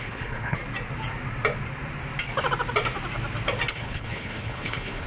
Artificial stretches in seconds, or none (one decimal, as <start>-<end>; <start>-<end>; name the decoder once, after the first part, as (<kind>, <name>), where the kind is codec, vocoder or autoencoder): 0.0-0.6 (codec, HILCodec); 3.7-5.1